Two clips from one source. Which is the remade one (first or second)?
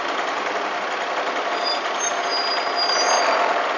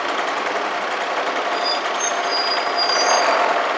second